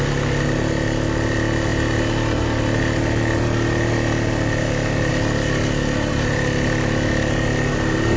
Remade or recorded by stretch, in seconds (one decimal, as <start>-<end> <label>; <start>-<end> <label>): 0.0-8.2 recorded